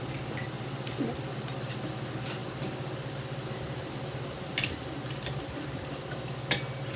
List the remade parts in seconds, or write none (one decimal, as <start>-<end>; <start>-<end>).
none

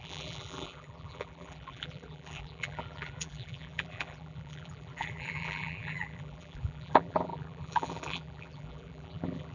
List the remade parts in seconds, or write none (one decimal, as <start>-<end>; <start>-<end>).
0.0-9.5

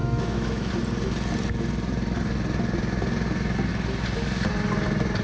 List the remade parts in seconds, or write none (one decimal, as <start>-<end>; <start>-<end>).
0.0-0.7